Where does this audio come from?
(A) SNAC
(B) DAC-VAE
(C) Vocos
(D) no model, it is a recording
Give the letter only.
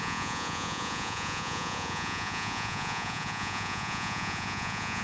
C